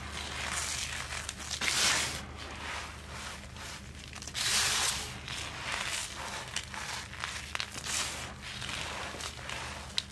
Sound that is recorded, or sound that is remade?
recorded